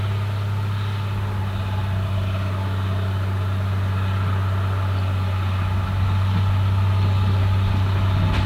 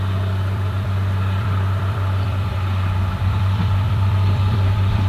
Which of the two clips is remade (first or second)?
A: second